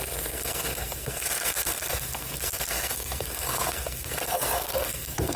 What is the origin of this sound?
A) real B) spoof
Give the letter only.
B